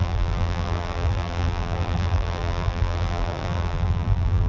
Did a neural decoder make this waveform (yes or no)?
yes